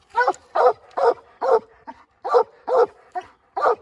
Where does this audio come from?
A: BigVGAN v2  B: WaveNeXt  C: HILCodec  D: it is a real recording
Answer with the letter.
D